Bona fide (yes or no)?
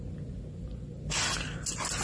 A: yes